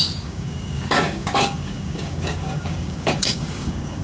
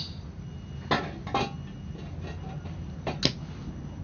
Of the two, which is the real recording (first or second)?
second